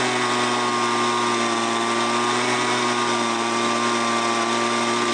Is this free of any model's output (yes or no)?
yes